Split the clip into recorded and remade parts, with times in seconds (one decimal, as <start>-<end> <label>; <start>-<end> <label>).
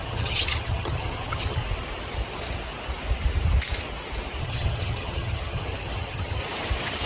0.0-1.6 remade; 1.6-4.4 recorded; 4.4-6.4 remade; 6.4-7.1 recorded